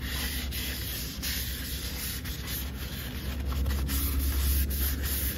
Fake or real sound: real